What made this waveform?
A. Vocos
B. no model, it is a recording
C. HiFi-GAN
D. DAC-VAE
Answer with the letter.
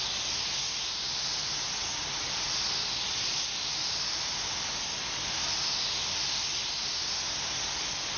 B